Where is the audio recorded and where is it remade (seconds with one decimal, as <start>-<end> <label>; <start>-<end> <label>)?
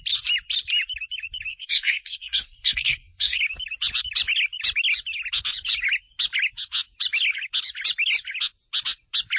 0.0-1.5 recorded; 1.5-3.4 remade; 3.4-9.4 recorded